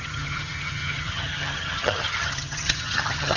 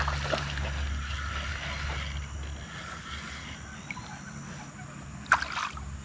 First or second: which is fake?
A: first